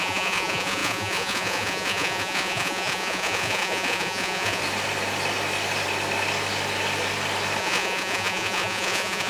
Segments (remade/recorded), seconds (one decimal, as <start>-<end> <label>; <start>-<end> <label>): 0.0-4.6 remade; 4.6-7.6 recorded; 7.6-9.3 remade